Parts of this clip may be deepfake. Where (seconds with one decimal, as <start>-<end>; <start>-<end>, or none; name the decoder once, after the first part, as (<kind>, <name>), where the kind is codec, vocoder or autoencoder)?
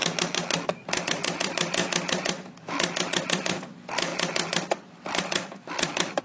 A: 1.0-6.2 (vocoder, BigVGAN v2)